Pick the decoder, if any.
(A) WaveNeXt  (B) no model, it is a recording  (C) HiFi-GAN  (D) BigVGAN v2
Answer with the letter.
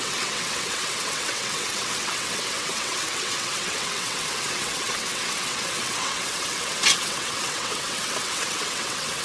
A